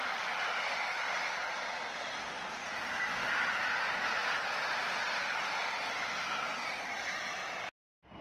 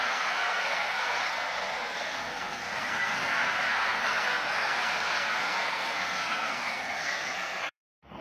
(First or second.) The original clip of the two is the first